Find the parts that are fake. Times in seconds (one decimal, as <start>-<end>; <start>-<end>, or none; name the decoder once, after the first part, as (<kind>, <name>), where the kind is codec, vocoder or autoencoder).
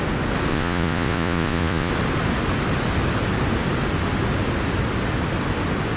0.5-1.9 (vocoder, Vocos)